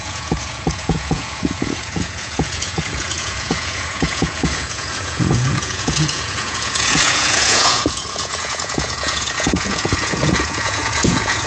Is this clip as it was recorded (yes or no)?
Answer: no